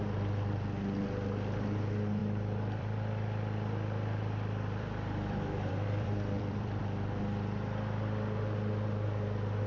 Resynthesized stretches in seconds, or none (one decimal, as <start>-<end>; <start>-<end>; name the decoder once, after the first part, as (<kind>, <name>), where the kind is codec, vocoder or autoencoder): 2.2-6.8 (vocoder, BigVGAN v2)

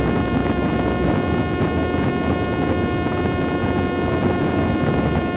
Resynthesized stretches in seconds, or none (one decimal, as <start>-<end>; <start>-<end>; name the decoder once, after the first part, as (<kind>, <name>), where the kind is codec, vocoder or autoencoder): none

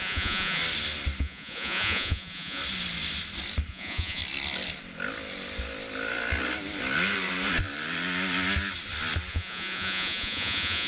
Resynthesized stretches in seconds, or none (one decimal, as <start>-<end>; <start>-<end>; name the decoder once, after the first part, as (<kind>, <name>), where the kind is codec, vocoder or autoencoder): 0.0-0.6 (vocoder, Vocos); 1.2-2.6; 3.7-4.2; 9.3-10.9

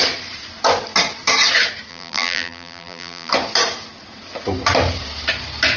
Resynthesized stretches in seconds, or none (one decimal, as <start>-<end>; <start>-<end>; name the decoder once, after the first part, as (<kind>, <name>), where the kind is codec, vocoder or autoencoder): 1.9-3.3 (vocoder, BigVGAN v2)